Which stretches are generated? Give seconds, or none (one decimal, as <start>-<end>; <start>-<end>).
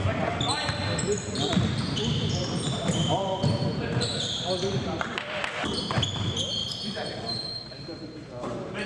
0.0-8.9